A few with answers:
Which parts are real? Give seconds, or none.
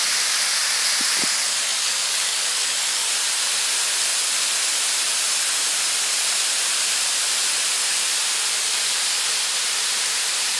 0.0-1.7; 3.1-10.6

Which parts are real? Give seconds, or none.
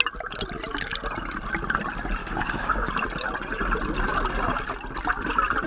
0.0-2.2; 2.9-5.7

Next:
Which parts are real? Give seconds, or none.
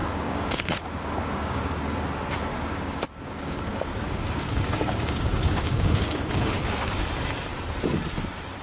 2.0-2.5; 7.0-8.6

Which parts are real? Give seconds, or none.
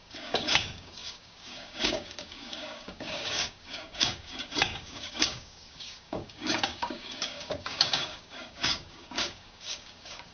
none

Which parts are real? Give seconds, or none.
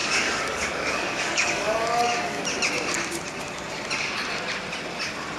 2.4-5.4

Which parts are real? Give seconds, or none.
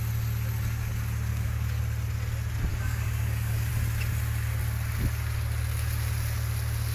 0.0-1.3; 1.8-2.7; 3.7-6.9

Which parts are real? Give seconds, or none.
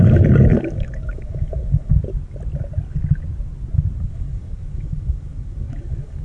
1.9-4.0